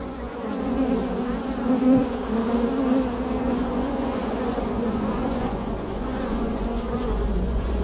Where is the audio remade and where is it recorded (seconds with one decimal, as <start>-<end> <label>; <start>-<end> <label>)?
0.0-2.2 remade; 2.2-3.4 recorded; 3.4-7.8 remade